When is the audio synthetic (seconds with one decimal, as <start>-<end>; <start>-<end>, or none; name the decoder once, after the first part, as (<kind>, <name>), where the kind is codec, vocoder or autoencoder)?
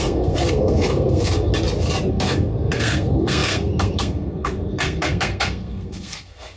0.0-1.5 (codec, SNAC); 2.1-6.6